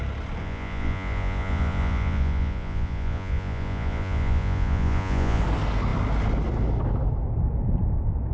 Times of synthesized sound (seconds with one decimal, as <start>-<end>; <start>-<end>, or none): 0.4-5.4